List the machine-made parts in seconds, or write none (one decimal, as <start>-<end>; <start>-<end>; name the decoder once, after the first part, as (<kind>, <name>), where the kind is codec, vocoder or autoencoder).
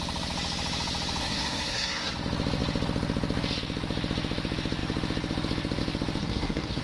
1.2-2.1 (codec, SNAC); 6.2-6.8